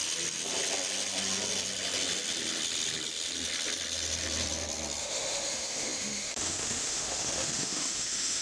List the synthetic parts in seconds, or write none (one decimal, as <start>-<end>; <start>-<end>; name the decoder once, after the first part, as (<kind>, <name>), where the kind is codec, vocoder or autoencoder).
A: 5.0-8.4 (autoencoder, DAC-VAE)